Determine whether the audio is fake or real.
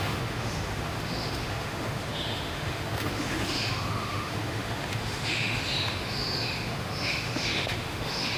fake